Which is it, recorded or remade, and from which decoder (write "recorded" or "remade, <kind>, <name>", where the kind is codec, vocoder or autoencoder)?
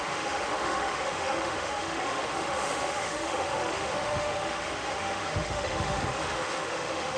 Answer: remade, autoencoder, DAC-VAE